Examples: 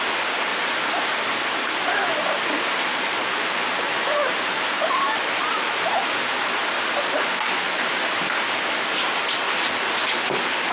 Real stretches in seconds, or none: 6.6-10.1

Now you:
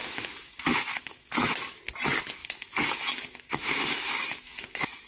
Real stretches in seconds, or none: 1.8-2.4

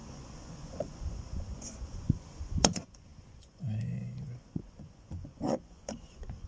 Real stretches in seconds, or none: none

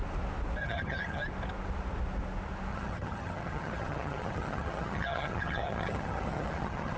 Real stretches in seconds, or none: 0.0-0.6; 1.2-2.7

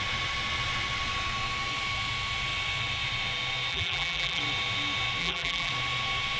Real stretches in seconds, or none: 0.0-3.7; 4.4-5.2; 5.7-6.4

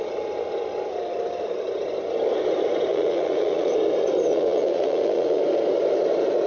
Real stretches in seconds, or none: 0.0-2.9; 3.7-4.3; 5.4-6.5